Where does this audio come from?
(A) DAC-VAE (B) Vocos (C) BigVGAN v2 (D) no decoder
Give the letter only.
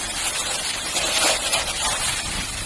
C